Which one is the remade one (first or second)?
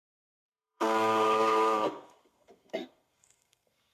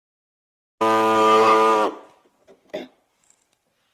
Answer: first